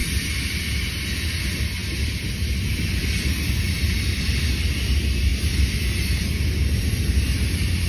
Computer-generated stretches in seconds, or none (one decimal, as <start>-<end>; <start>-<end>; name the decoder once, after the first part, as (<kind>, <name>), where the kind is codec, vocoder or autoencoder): none